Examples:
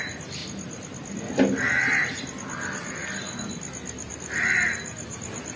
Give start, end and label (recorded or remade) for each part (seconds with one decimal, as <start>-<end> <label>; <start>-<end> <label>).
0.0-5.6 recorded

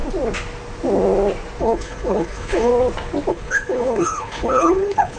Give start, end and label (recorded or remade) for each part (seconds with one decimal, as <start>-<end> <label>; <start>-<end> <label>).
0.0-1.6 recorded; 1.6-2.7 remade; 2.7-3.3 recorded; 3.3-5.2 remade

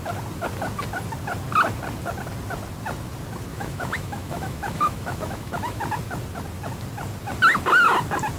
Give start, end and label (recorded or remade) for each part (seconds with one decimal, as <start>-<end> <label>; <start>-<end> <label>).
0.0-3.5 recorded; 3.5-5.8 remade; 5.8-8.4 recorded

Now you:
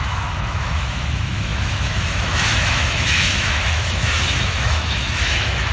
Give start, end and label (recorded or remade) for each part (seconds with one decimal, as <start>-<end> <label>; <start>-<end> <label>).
0.0-5.7 remade

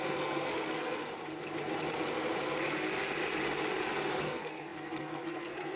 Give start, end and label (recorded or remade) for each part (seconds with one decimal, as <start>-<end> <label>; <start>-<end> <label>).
0.0-1.0 remade; 1.0-4.2 recorded; 4.2-5.8 remade

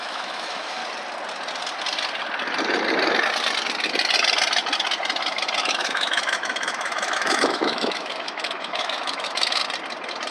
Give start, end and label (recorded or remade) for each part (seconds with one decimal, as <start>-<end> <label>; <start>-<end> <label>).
0.0-0.8 remade; 0.8-5.6 recorded; 5.6-9.6 remade; 9.6-10.3 recorded

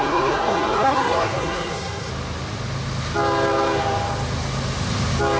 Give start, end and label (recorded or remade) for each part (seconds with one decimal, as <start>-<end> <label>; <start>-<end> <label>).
0.0-2.1 remade; 2.1-5.4 recorded